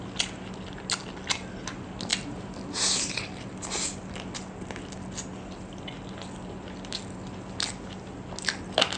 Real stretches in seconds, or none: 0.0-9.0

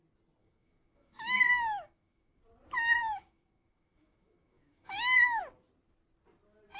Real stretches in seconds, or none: 0.0-0.4; 2.4-3.0; 5.4-6.8